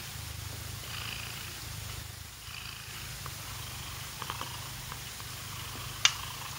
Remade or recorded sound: recorded